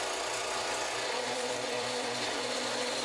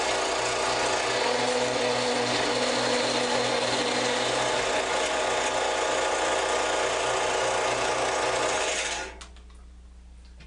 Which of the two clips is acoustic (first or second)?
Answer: second